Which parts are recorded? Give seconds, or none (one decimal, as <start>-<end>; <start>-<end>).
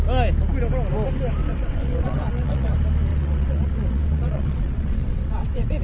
0.0-1.4; 2.7-3.1